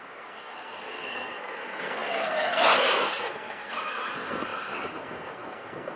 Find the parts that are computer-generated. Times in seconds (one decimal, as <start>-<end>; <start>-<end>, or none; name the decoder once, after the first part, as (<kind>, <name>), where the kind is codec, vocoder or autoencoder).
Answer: 0.0-6.0 (codec, SNAC)